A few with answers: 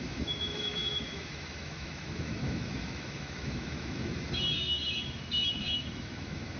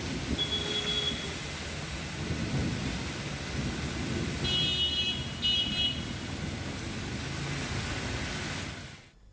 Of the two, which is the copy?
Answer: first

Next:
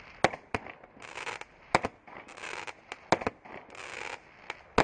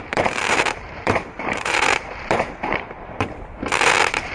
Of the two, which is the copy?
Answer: second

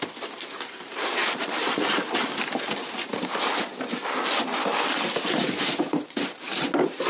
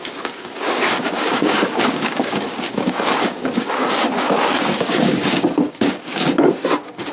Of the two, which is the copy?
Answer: second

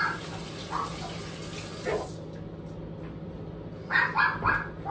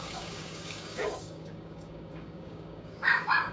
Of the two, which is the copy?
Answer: second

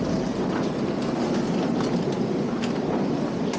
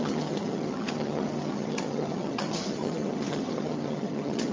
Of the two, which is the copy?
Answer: second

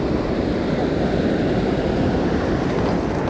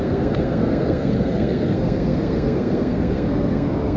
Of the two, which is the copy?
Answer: second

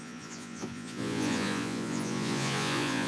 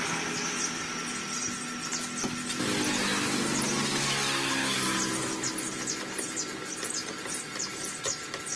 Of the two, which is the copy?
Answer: first